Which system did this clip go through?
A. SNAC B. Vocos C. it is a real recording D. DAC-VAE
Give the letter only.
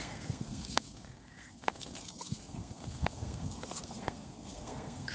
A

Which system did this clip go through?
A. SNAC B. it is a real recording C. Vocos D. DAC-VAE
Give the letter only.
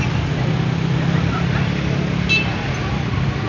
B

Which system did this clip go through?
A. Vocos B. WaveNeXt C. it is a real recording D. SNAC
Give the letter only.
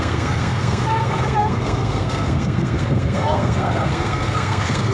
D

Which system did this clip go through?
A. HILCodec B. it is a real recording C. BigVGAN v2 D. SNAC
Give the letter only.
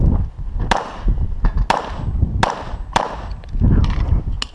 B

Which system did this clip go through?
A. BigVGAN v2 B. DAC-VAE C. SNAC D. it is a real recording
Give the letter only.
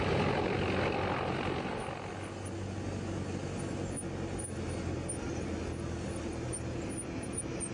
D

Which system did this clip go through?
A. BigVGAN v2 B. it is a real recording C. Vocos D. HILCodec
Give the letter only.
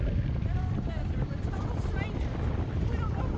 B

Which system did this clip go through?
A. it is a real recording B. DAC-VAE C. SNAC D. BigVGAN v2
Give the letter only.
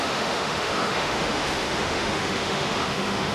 B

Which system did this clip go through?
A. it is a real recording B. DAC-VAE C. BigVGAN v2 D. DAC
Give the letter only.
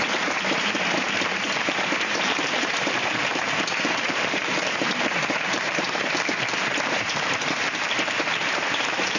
C